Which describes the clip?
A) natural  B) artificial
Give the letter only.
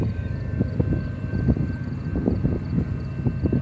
A